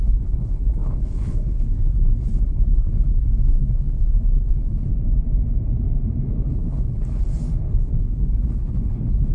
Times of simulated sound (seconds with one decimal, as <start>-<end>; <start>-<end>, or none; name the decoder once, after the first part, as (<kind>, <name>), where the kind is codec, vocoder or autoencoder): 0.0-4.9 (codec, HILCodec); 6.5-7.3; 8.0-9.3

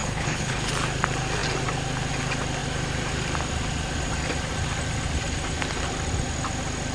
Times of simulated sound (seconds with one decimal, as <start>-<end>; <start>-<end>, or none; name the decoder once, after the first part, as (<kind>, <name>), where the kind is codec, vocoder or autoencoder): 0.0-0.7 (codec, HILCodec)